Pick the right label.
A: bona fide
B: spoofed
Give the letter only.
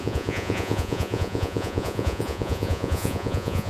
B